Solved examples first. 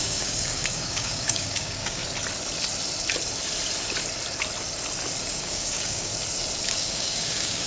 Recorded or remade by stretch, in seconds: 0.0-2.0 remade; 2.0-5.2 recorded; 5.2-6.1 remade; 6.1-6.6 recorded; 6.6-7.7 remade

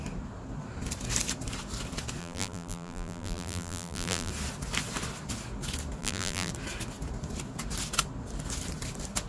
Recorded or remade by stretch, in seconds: 0.0-2.2 recorded; 2.2-4.3 remade; 4.3-6.0 recorded; 6.0-6.5 remade; 6.5-9.3 recorded

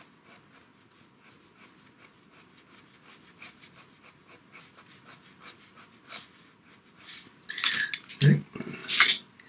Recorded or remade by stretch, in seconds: 0.0-9.5 recorded

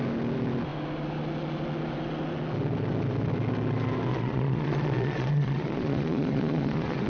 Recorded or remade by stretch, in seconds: 0.0-4.1 recorded; 4.1-7.1 remade

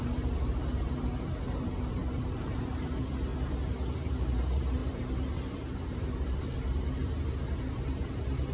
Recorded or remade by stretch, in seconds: 0.0-3.3 remade; 3.3-4.1 recorded; 4.1-8.5 remade

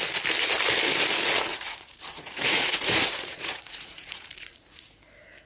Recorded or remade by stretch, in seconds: 0.0-1.5 recorded; 1.5-4.8 remade; 4.8-5.5 recorded